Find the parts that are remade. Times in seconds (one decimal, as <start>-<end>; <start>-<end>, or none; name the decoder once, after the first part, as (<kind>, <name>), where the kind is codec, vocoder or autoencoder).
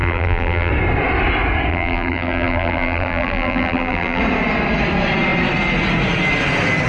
0.0-0.7 (vocoder, BigVGAN v2); 1.7-4.2